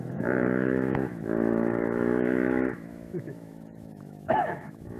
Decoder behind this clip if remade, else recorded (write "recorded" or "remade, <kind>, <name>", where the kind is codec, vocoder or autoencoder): remade, autoencoder, DAC-VAE